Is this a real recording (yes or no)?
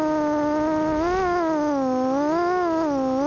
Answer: yes